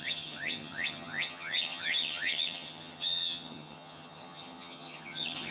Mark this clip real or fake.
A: fake